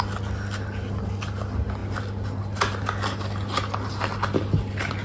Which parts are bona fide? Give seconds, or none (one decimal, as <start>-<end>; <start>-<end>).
0.0-5.0

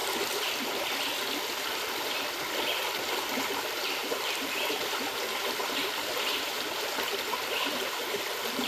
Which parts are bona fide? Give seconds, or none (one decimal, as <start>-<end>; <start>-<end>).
0.0-4.0; 4.9-8.7

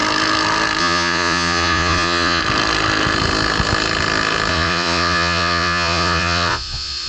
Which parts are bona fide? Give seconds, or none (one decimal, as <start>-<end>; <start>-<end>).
0.0-0.8; 2.4-4.5

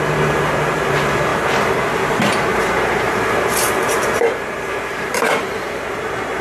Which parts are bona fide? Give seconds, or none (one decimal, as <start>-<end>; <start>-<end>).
0.0-2.5